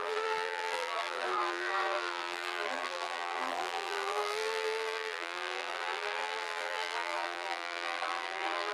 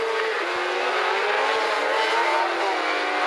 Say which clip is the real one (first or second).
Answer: second